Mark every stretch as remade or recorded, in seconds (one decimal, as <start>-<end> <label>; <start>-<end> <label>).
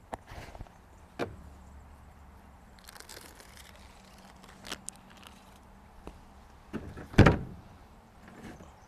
0.0-3.1 recorded; 3.1-3.7 remade; 3.7-7.8 recorded; 7.8-8.9 remade